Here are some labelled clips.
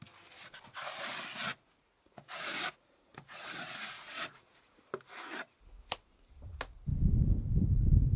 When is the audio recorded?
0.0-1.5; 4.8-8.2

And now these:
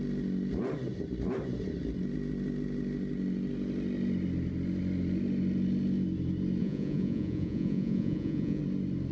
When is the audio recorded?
0.0-6.6; 8.6-9.1

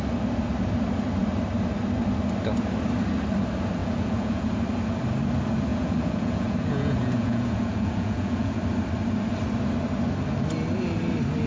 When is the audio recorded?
0.0-3.8; 4.5-5.7; 8.6-11.5